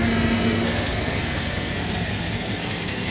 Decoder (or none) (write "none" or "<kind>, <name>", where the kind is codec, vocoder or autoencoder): codec, SNAC